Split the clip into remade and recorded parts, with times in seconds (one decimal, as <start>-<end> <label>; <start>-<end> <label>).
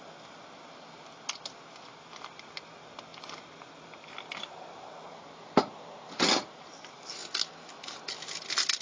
0.0-8.8 recorded